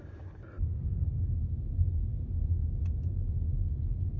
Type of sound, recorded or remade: recorded